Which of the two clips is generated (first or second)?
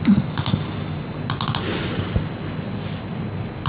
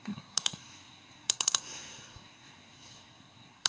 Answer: second